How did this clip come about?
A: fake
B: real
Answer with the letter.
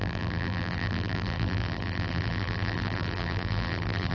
A